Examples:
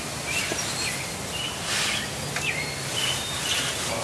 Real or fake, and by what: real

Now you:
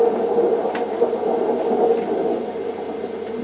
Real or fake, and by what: real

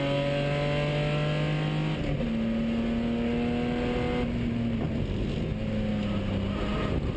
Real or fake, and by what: real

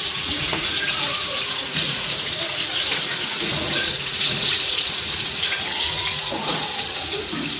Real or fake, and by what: fake, vocoder, Vocos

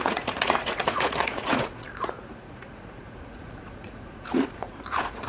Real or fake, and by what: fake, vocoder, Vocos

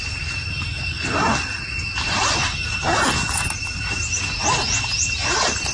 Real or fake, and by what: real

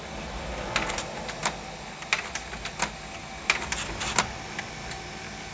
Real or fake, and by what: real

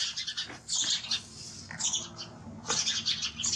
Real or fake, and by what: real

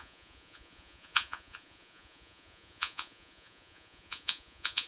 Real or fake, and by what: fake, vocoder, Vocos